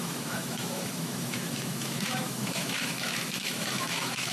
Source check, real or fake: fake